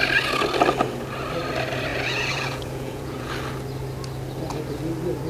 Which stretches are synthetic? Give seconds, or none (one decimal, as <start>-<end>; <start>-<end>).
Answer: 1.9-3.3